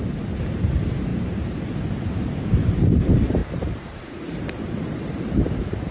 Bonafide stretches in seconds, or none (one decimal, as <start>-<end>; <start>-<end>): 0.0-1.1; 2.5-3.4; 4.8-5.9